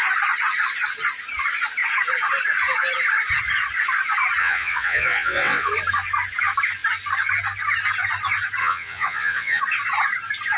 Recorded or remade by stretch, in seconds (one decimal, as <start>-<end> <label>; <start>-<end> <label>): 0.0-4.4 recorded; 4.4-5.7 remade; 5.7-8.6 recorded; 8.6-9.6 remade; 9.6-10.6 recorded